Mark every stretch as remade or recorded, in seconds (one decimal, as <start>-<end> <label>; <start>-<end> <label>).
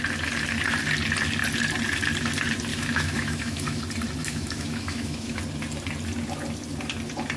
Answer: 0.0-2.7 recorded; 2.7-3.8 remade; 3.8-4.2 recorded; 4.2-5.4 remade; 5.4-7.4 recorded